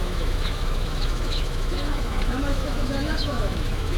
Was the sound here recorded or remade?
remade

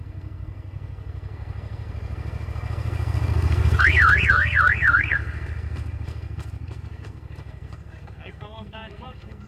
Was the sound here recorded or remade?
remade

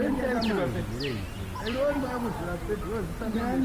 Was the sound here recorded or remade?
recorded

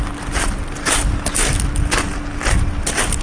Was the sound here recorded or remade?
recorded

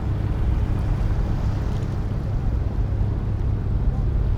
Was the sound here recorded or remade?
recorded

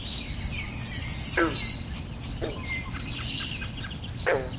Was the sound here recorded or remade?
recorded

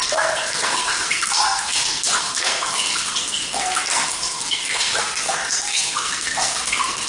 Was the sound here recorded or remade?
remade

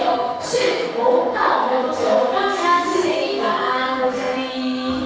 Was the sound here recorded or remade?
remade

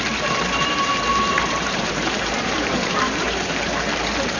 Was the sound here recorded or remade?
remade